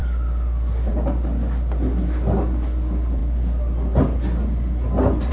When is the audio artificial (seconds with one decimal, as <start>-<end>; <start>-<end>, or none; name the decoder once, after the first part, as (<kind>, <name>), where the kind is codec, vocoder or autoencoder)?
none